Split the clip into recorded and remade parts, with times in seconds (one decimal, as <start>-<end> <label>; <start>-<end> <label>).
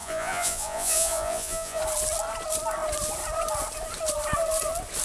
0.0-1.8 remade; 1.8-5.0 recorded